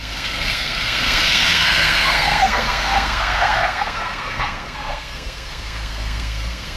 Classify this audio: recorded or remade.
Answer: remade